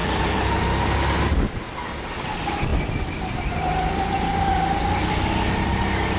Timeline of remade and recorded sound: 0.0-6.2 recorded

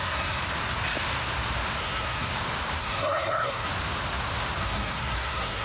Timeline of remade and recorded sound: 0.0-0.4 remade; 0.4-1.8 recorded; 1.8-2.3 remade; 2.3-2.8 recorded; 2.8-3.7 remade; 3.7-4.6 recorded; 4.6-5.6 remade

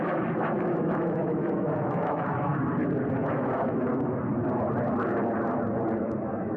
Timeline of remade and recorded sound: 0.0-2.5 remade; 2.5-3.1 recorded; 3.1-3.9 remade; 3.9-6.0 recorded; 6.0-6.6 remade